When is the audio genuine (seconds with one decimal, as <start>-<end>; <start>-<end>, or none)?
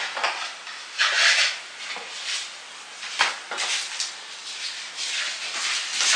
0.0-6.2